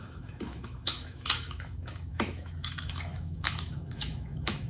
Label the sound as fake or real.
fake